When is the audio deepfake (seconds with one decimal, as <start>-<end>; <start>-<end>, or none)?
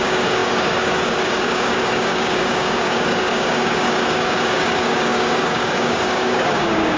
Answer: 0.0-7.0